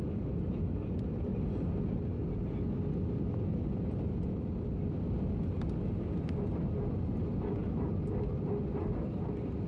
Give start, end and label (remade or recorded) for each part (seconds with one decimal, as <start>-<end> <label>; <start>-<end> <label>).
0.0-7.6 recorded; 7.6-8.6 remade; 8.6-9.7 recorded